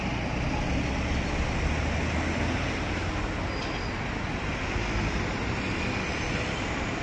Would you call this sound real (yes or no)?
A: yes